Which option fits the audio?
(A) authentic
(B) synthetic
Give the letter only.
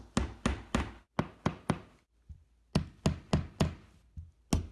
A